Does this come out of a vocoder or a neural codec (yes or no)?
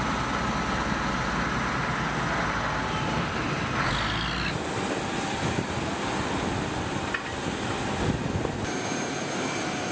no